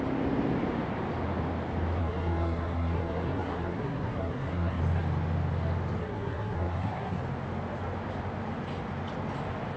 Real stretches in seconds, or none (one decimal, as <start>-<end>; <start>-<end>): 0.0-2.0; 4.8-6.0; 7.2-9.8